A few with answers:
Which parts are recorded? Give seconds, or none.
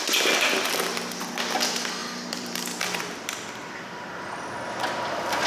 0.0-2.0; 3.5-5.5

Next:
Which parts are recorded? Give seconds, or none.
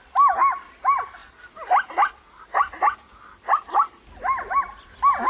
0.0-5.3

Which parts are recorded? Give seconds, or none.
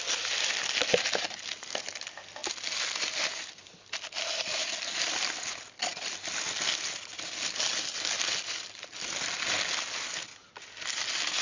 0.0-11.4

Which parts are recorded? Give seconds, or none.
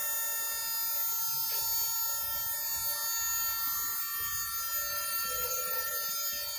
0.0-4.9; 5.9-6.6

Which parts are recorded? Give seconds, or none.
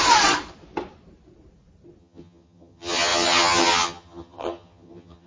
0.0-2.0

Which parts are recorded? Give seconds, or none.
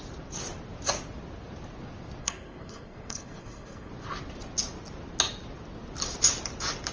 0.0-2.2; 3.9-6.9